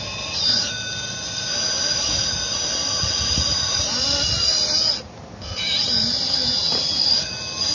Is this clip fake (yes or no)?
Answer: no